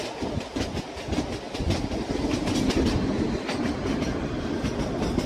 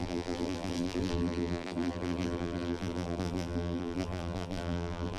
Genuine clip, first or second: first